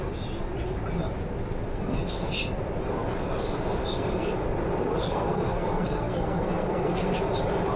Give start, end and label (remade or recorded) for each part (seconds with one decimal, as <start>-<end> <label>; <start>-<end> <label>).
0.0-1.7 recorded; 1.7-2.3 remade; 2.3-3.8 recorded; 3.8-4.3 remade; 4.3-5.0 recorded; 5.0-7.2 remade; 7.2-7.8 recorded